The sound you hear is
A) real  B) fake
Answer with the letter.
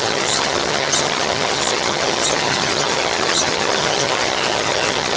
B